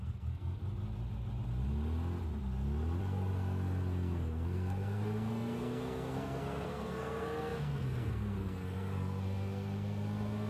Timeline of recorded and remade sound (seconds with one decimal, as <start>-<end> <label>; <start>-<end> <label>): 0.0-0.6 remade; 0.6-3.0 recorded; 3.0-10.5 remade